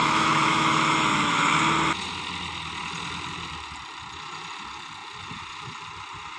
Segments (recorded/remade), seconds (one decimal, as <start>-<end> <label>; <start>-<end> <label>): 0.0-1.5 remade; 1.5-6.4 recorded